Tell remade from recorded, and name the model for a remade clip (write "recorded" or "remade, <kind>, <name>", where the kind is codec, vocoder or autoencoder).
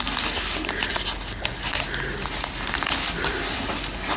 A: recorded